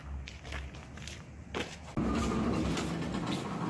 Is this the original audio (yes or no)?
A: yes